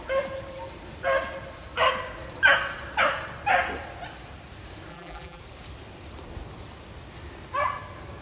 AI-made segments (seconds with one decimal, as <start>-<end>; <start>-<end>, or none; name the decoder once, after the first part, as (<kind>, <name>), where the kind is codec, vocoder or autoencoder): 4.9-5.4 (vocoder, BigVGAN v2)

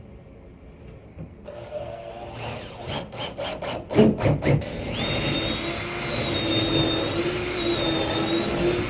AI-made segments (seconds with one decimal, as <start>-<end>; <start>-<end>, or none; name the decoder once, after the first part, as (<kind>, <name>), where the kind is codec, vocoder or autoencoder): 1.1-2.1 (codec, SNAC)

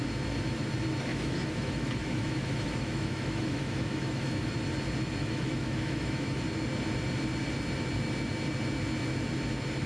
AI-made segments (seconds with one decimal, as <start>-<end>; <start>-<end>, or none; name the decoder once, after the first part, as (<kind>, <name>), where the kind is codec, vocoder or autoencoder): 1.1-4.5 (autoencoder, DAC-VAE); 5.2-6.4

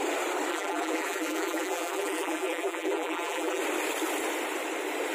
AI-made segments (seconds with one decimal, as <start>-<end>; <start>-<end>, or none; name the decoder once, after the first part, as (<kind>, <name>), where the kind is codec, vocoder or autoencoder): 0.5-3.6 (vocoder, BigVGAN v2)

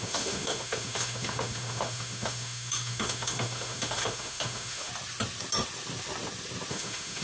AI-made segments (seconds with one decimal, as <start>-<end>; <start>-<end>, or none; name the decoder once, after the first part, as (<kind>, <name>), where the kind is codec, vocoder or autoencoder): 0.0-4.9 (autoencoder, DAC-VAE); 6.7-7.2

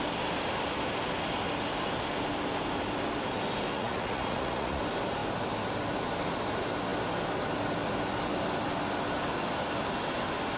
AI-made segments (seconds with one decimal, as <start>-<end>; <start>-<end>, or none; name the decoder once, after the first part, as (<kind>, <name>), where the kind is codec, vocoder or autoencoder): 3.7-4.8 (vocoder, Vocos)

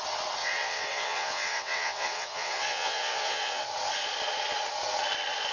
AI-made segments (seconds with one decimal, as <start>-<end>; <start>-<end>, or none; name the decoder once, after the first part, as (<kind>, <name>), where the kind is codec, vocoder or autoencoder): 0.4-3.7 (vocoder, WaveNeXt)

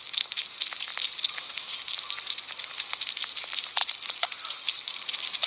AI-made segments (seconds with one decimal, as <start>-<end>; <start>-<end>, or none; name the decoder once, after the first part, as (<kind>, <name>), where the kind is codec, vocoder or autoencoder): none